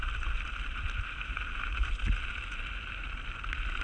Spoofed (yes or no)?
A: no